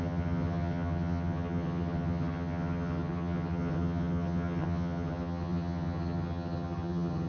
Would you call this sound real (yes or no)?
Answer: no